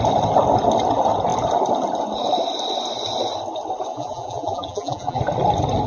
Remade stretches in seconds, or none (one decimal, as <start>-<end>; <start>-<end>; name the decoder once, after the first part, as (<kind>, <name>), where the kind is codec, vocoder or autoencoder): 3.9-5.2 (vocoder, BigVGAN v2)